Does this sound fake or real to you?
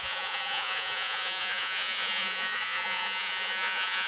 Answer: fake